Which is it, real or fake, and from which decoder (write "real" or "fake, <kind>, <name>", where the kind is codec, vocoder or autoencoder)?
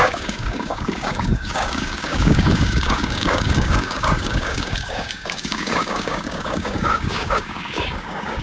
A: fake, codec, DAC